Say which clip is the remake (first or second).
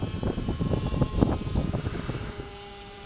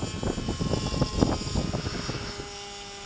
first